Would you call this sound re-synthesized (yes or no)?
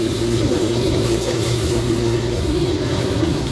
yes